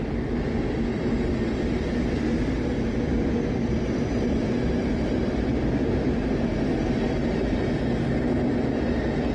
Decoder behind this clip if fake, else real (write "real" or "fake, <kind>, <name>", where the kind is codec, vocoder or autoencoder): real